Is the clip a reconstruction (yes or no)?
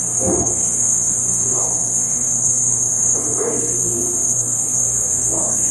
yes